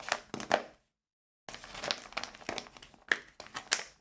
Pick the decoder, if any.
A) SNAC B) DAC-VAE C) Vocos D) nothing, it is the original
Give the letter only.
D